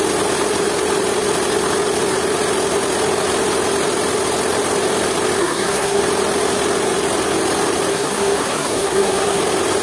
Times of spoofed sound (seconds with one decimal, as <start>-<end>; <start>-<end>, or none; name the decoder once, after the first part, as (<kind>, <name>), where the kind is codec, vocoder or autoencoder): 5.4-6.0 (codec, SNAC); 7.9-9.4